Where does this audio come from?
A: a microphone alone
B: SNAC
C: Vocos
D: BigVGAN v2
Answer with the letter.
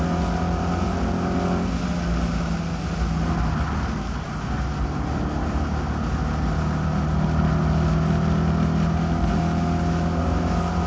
A